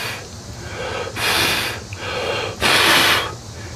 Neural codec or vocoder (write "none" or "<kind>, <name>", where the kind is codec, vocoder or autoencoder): none